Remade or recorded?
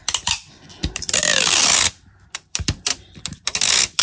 remade